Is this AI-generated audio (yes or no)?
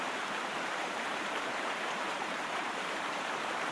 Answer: yes